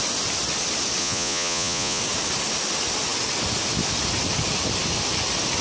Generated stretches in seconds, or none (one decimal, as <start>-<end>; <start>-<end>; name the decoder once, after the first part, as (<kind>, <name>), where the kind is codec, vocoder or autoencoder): 1.0-2.0 (vocoder, Vocos)